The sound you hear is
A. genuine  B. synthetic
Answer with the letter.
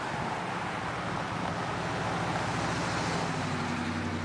A